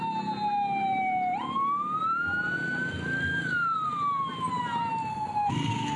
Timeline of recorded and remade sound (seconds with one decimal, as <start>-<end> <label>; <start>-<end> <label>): 0.0-5.1 recorded; 5.1-6.0 remade